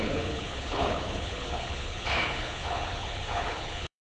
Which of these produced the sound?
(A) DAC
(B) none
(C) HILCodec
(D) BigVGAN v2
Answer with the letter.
C